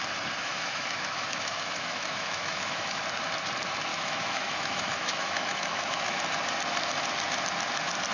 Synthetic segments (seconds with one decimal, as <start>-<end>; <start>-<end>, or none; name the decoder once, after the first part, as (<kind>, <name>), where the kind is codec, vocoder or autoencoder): 0.4-3.0 (autoencoder, DAC-VAE); 3.9-6.2